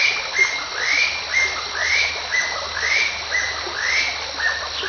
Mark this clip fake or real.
real